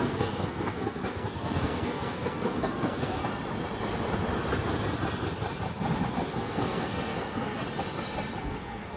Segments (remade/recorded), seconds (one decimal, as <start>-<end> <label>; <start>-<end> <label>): 0.0-3.2 remade; 3.2-6.1 recorded; 6.1-7.6 remade; 7.6-8.4 recorded; 8.4-9.0 remade